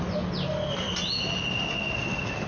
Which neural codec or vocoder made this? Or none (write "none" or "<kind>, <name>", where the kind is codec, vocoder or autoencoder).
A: none